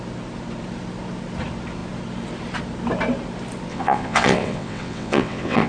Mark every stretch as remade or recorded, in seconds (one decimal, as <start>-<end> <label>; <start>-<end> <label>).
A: 0.0-3.7 recorded; 3.7-5.7 remade